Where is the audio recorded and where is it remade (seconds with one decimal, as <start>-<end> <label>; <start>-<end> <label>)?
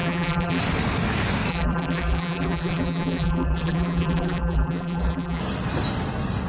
0.0-0.6 remade; 0.6-1.5 recorded; 1.5-5.4 remade; 5.4-6.5 recorded